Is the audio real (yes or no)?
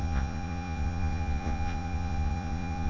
no